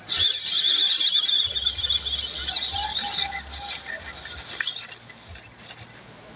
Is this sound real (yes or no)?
yes